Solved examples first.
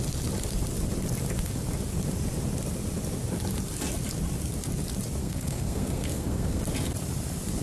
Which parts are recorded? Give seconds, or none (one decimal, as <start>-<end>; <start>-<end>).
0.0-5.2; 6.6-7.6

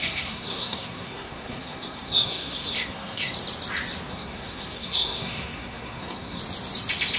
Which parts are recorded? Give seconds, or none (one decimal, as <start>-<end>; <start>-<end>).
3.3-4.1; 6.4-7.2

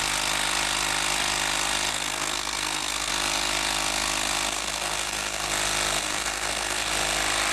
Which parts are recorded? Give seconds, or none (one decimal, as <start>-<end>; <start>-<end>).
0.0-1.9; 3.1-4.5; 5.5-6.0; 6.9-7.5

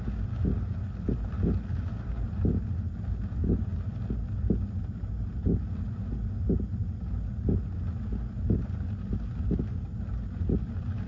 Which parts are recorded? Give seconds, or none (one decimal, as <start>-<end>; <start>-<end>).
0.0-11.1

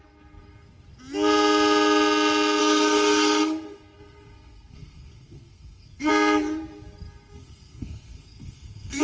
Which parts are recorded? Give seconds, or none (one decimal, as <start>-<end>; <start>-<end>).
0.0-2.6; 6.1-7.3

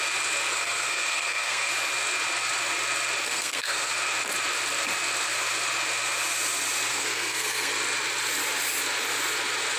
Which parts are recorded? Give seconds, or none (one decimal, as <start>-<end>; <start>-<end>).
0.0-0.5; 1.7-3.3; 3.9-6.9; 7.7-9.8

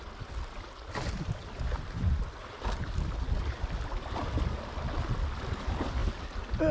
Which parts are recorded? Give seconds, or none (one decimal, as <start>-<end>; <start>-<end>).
0.0-6.7